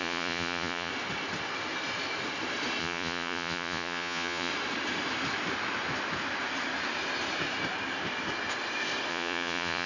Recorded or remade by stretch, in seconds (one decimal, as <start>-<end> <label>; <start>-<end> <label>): 0.0-0.9 remade; 0.9-2.8 recorded; 2.8-4.5 remade; 4.5-9.1 recorded; 9.1-9.9 remade